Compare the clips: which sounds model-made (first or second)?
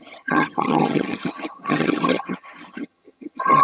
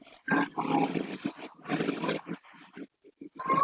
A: first